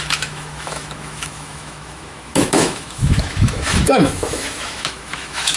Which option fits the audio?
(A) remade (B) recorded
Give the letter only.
A